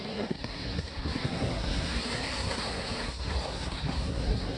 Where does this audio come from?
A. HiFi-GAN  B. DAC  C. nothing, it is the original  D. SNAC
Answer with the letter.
D